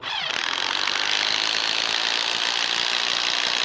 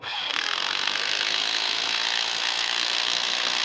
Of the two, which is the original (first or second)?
first